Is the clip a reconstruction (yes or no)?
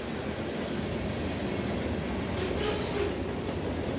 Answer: no